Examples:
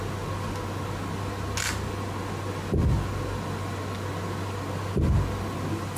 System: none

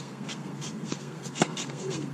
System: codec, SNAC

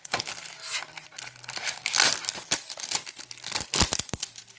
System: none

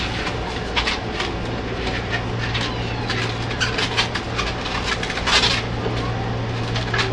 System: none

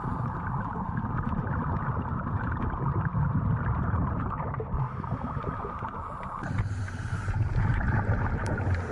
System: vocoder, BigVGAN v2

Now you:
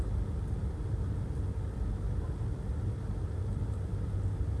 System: none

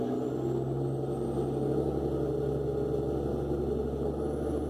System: none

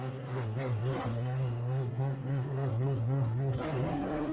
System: codec, SNAC